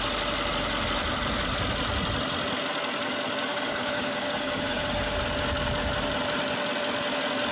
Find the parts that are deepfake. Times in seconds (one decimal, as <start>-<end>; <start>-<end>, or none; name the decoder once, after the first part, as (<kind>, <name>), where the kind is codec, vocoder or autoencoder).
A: 3.5-5.1 (codec, DAC)